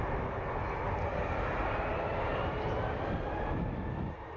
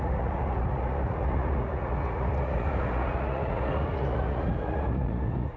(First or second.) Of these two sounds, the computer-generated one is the second